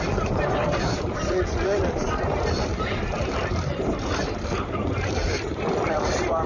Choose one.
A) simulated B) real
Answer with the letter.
A